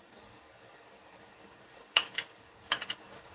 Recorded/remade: remade